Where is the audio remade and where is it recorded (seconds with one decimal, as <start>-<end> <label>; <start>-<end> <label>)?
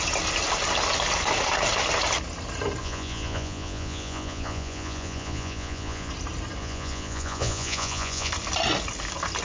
0.0-2.8 recorded; 2.8-6.1 remade; 6.1-6.6 recorded; 6.6-8.3 remade; 8.3-9.4 recorded